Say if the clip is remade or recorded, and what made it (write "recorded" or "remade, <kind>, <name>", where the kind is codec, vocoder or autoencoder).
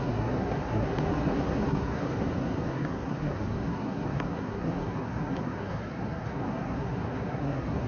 remade, codec, SNAC